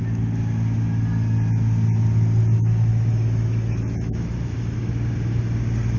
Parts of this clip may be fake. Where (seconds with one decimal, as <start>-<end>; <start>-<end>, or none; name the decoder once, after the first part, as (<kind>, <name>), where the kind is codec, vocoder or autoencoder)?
2.9-4.9 (autoencoder, DAC-VAE)